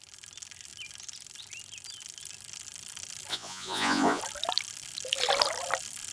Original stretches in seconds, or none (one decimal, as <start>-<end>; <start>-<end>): 0.0-3.3; 4.2-6.1